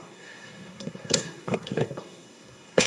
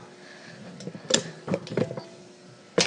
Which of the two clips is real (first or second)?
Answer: second